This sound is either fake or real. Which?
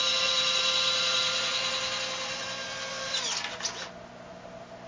real